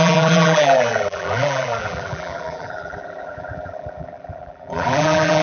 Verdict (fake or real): fake